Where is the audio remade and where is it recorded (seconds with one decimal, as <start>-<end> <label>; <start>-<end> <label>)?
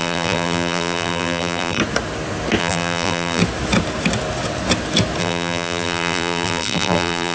0.0-1.8 remade; 1.8-2.6 recorded; 2.6-3.4 remade; 3.4-5.2 recorded; 5.2-7.3 remade